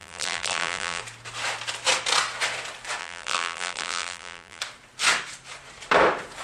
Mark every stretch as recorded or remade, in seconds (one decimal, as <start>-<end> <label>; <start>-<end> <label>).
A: 0.0-1.0 remade; 1.0-3.0 recorded; 3.0-4.6 remade; 4.6-6.4 recorded